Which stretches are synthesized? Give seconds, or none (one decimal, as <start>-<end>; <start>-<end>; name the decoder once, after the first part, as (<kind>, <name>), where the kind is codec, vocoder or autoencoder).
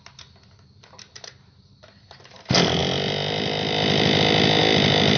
none